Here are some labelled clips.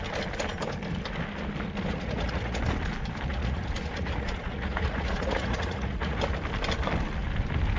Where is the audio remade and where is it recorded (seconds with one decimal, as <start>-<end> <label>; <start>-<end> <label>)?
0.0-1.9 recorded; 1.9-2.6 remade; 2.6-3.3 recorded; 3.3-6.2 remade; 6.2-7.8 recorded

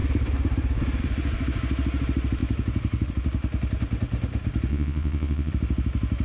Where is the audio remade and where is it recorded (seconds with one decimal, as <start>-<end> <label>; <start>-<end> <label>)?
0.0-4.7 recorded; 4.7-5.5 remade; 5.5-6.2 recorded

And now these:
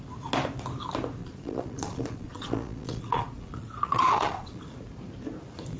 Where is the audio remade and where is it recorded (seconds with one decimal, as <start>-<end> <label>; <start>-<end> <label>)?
0.0-1.2 recorded; 1.2-4.6 remade; 4.6-5.8 recorded

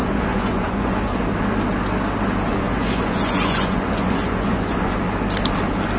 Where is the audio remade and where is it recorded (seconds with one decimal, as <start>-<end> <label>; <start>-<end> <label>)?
0.0-1.2 remade; 1.2-2.5 recorded; 2.5-4.9 remade; 4.9-6.0 recorded